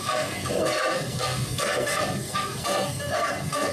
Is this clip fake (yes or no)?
yes